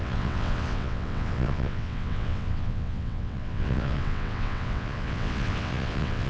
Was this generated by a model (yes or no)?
yes